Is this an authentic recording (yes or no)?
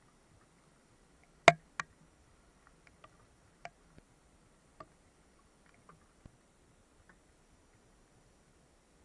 yes